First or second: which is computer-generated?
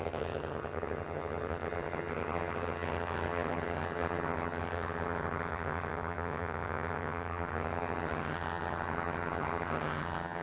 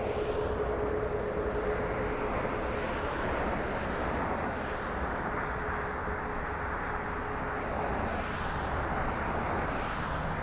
first